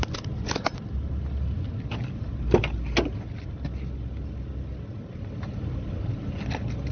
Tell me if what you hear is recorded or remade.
recorded